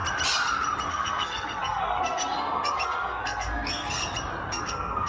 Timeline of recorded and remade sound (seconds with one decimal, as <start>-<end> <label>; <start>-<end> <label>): 0.0-0.9 recorded; 0.9-4.0 remade; 4.0-4.5 recorded; 4.5-5.1 remade